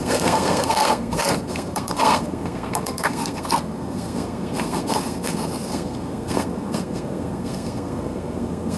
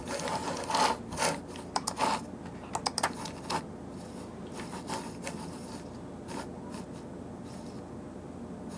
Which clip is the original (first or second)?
second